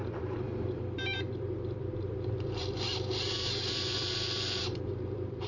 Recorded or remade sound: remade